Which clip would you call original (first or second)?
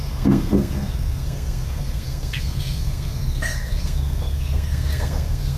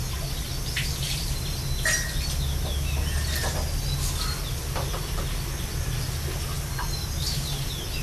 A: second